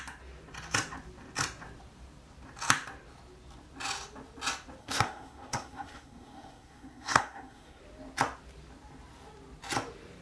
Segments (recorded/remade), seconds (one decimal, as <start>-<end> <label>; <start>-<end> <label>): 0.0-4.8 recorded; 4.8-7.8 remade; 7.8-10.2 recorded